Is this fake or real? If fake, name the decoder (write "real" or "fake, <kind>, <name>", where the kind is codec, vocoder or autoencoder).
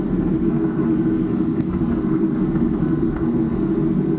fake, codec, SNAC